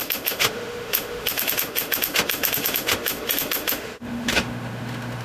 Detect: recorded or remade remade